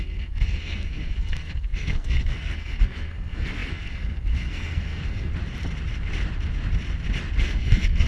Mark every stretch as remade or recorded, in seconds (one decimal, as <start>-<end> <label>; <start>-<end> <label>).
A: 0.0-5.3 remade; 5.3-7.4 recorded; 7.4-8.1 remade

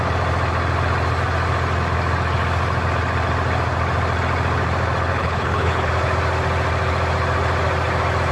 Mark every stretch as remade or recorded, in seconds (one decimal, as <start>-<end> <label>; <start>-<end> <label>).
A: 0.0-5.1 recorded; 5.1-5.9 remade; 5.9-8.3 recorded

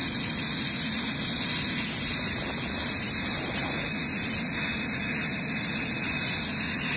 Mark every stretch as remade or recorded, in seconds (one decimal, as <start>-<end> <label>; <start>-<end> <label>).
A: 0.0-7.0 recorded

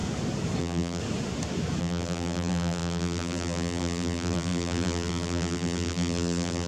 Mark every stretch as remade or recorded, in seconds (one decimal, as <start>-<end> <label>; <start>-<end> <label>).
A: 0.0-0.6 recorded; 0.6-1.0 remade; 1.0-1.8 recorded; 1.8-6.7 remade

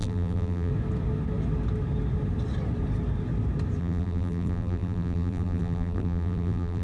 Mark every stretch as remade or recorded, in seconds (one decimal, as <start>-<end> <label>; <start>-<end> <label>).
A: 0.0-0.7 remade; 0.7-3.8 recorded; 3.8-6.8 remade

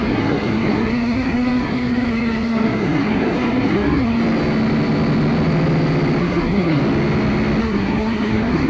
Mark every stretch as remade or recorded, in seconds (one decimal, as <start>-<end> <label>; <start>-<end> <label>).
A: 0.0-4.2 remade; 4.2-6.2 recorded; 6.2-6.8 remade; 6.8-7.6 recorded; 7.6-8.7 remade